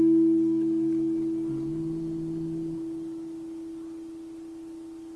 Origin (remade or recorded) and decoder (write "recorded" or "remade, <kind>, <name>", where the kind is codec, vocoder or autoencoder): recorded